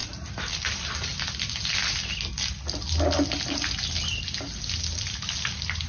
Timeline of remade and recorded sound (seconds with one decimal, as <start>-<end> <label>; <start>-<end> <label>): 0.0-5.9 recorded